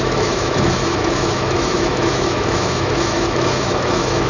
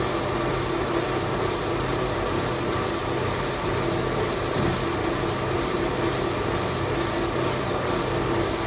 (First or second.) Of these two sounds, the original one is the second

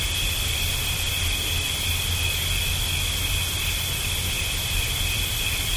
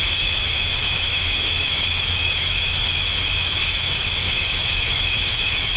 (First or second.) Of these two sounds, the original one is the first